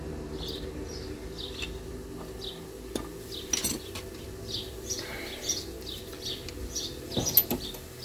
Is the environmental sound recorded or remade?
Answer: recorded